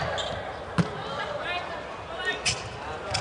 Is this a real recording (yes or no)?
yes